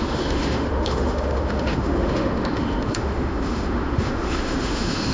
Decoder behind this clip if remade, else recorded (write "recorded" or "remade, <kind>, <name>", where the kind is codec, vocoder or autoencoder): remade, autoencoder, DAC-VAE